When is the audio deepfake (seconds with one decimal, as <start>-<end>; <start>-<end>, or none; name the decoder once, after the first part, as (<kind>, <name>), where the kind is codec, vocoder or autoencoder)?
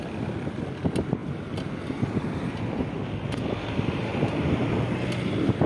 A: 1.2-2.5 (vocoder, BigVGAN v2); 4.1-5.7